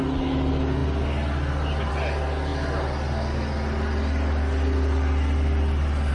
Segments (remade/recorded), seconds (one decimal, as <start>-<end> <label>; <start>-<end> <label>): 0.0-6.1 recorded